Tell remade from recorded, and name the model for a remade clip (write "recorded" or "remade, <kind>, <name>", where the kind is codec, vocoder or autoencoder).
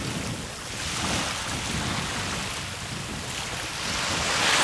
recorded